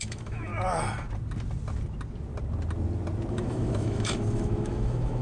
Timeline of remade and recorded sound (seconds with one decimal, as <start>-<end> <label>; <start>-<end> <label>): 0.0-0.5 remade; 0.5-3.3 recorded; 3.3-5.2 remade